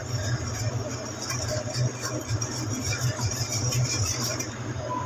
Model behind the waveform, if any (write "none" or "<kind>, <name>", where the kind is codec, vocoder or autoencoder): none